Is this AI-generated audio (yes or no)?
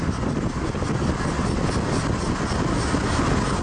no